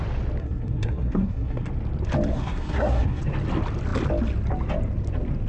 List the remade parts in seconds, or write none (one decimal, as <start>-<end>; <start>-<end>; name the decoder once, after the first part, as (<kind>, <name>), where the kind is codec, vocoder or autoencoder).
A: 0.4-1.7 (codec, SNAC); 2.3-3.2